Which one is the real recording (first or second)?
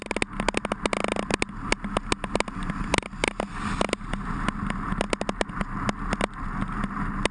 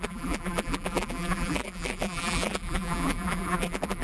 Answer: first